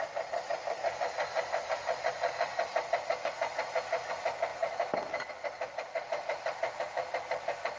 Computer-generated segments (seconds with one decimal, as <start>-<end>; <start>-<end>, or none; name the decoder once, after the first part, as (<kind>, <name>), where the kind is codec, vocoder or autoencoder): none